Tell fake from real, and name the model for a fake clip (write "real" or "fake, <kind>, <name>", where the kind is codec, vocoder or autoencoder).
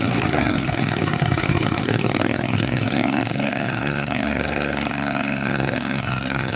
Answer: fake, codec, SNAC